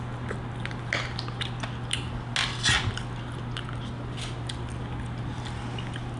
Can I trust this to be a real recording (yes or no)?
yes